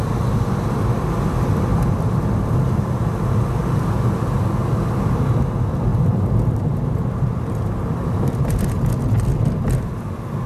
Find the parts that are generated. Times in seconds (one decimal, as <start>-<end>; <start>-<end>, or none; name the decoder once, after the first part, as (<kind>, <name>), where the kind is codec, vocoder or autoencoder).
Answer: 1.7-2.8 (vocoder, BigVGAN v2); 5.9-8.6